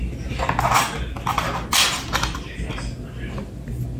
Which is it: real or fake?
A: real